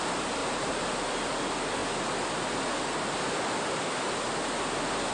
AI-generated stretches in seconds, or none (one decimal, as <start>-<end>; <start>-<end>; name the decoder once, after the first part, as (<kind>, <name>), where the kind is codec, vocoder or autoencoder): 0.4-1.4 (vocoder, BigVGAN v2)